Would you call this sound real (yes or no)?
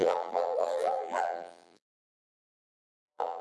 no